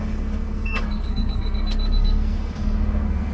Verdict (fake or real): fake